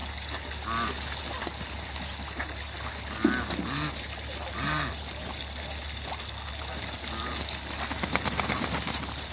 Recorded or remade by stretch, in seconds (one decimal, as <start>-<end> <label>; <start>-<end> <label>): 0.0-9.3 recorded